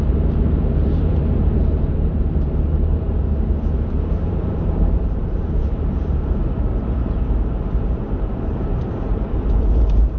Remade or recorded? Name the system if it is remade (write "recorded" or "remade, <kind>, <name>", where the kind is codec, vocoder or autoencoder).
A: remade, vocoder, BigVGAN v2